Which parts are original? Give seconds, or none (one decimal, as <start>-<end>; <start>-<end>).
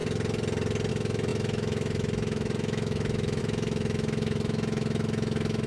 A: 0.0-0.9